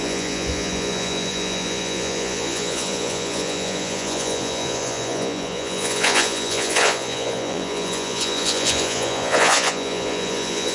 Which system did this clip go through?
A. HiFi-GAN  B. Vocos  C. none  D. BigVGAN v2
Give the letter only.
B